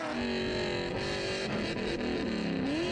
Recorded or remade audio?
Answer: recorded